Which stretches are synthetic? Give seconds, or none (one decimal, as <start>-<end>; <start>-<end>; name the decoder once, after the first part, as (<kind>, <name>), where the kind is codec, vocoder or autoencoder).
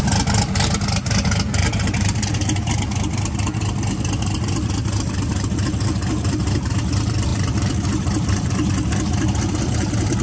1.6-2.3 (vocoder, BigVGAN v2); 7.3-8.7